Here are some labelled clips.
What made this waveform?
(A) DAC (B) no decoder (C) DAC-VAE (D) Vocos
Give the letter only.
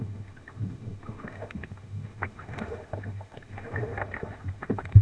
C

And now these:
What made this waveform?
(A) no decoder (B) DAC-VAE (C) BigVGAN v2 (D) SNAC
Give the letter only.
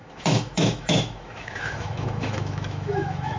B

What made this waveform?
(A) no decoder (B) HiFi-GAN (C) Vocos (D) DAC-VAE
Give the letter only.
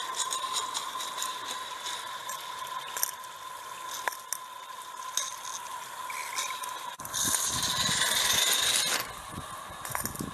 A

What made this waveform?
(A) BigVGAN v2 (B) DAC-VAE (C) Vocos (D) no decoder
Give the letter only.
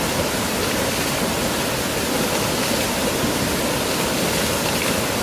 D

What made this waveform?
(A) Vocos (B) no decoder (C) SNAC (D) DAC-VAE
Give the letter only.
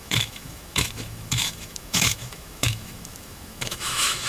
D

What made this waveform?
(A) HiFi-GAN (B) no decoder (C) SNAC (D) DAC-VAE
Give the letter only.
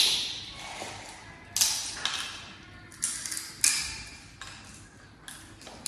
B